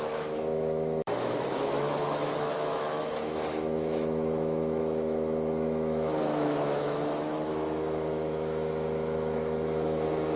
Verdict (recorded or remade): remade